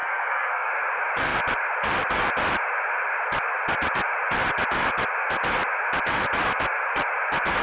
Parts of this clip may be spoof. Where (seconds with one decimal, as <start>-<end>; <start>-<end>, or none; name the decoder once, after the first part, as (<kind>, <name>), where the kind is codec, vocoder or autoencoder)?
0.0-0.7 (codec, SNAC)